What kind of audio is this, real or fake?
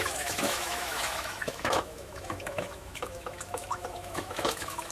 fake